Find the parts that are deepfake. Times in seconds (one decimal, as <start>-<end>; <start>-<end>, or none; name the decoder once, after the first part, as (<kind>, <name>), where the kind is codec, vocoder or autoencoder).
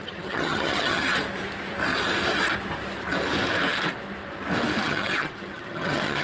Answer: 0.0-1.1 (vocoder, HiFi-GAN); 4.8-6.2